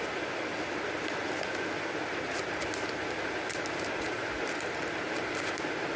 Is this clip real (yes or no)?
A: yes